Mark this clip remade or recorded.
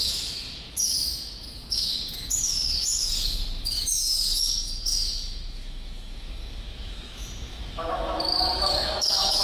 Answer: remade